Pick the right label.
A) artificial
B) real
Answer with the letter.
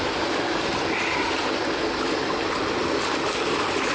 B